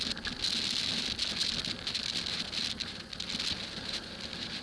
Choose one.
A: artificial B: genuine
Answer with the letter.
B